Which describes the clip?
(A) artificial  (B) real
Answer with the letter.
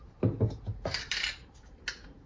B